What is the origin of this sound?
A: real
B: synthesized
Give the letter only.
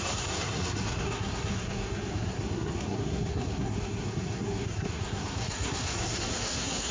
B